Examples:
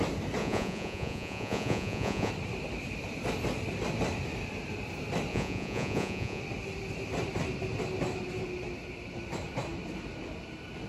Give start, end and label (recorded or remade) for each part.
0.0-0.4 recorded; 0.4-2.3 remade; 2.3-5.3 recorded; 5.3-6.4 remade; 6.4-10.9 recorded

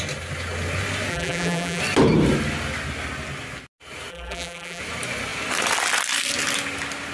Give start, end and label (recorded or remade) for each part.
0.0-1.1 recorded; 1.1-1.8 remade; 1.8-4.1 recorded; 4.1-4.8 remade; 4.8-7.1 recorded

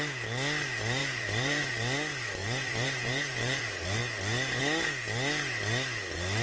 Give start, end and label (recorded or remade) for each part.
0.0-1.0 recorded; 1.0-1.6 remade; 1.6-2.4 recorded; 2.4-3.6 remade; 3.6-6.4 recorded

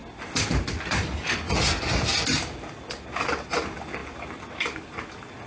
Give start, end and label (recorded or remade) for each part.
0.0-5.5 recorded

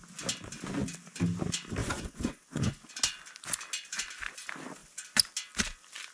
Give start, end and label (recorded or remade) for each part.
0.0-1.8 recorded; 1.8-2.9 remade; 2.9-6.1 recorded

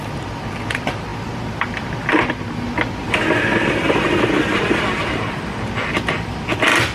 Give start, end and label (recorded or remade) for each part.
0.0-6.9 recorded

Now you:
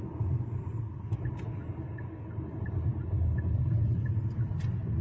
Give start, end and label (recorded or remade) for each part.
0.0-5.0 recorded

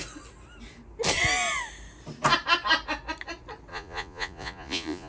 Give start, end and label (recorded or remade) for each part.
0.0-3.7 recorded; 3.7-5.1 remade